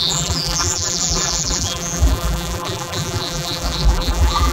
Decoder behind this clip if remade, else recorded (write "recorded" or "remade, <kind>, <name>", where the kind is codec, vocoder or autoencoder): remade, vocoder, BigVGAN v2